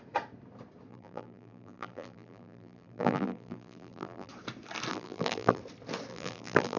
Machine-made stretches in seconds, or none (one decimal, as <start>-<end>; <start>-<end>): 0.9-4.3; 4.9-5.6; 6.1-6.8